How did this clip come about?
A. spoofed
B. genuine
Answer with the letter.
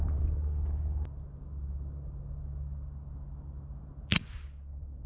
B